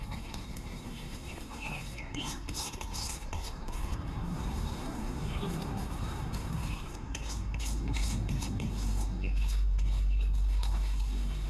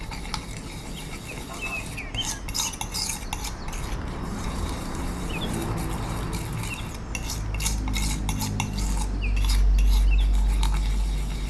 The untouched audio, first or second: second